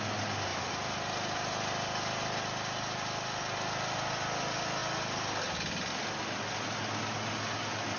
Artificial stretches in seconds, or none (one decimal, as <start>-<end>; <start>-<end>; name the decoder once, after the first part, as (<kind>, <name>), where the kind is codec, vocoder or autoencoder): none